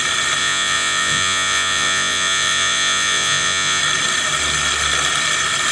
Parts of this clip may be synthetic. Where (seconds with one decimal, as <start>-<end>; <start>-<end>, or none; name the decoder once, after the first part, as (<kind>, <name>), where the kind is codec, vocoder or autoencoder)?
0.4-3.8 (vocoder, Vocos)

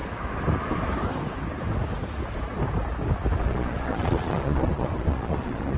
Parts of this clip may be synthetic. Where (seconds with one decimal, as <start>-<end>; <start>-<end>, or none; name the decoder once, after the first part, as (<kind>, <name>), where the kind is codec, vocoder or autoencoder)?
3.4-5.8 (vocoder, Vocos)